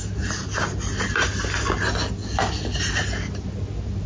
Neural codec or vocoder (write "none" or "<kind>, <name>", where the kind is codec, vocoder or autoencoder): none